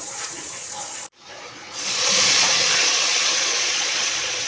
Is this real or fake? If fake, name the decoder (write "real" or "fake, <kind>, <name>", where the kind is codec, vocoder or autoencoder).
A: fake, vocoder, Vocos